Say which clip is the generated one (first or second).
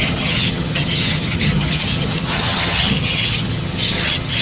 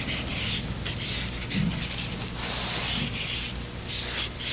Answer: first